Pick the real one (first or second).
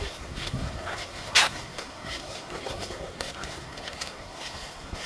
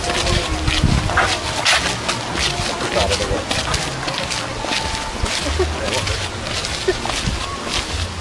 second